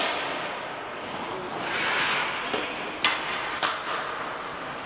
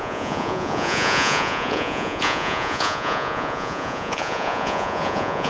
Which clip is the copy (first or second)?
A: second